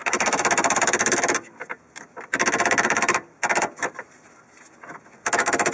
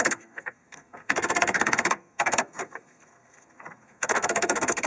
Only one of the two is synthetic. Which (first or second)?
second